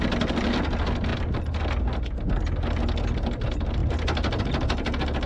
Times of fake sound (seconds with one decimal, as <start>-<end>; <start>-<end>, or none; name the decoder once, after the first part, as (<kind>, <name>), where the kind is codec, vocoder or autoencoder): none